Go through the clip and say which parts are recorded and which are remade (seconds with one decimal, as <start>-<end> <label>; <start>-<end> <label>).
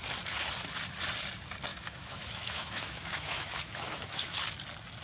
0.0-1.7 recorded; 1.7-4.4 remade; 4.4-5.0 recorded